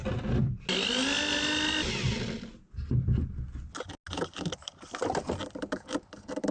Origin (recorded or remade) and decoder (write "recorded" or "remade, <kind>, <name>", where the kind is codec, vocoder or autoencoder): recorded